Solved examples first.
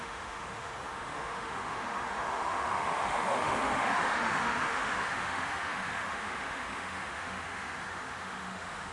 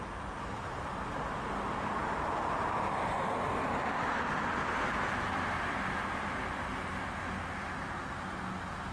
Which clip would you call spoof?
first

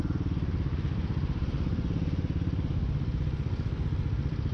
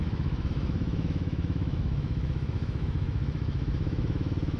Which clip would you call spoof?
second